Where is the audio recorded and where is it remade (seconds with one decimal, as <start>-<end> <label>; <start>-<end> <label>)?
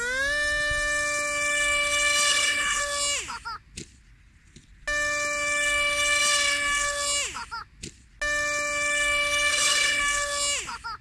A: 0.0-2.3 recorded; 2.3-2.8 remade; 2.8-9.5 recorded; 9.5-10.0 remade; 10.0-11.0 recorded